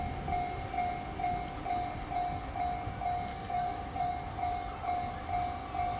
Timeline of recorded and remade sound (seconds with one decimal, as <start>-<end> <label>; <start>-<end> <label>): 0.0-3.3 recorded; 3.3-4.1 remade; 4.1-6.0 recorded